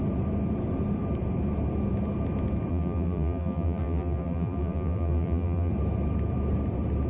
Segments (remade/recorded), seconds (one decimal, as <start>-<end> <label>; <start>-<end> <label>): 0.0-2.7 recorded; 2.7-5.7 remade; 5.7-7.1 recorded